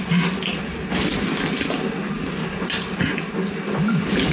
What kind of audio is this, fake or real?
real